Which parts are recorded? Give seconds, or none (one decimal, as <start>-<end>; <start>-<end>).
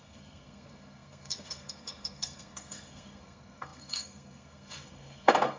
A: none